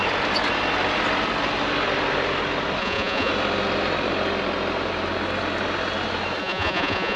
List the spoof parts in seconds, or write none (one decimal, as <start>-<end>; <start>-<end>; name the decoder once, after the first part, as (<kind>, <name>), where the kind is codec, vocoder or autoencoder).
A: 2.8-3.3 (vocoder, Vocos); 6.4-7.2